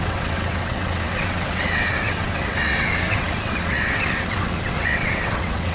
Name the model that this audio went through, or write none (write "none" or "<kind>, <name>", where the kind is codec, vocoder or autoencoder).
vocoder, WaveNeXt